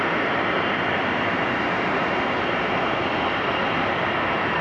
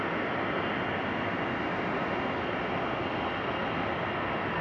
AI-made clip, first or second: first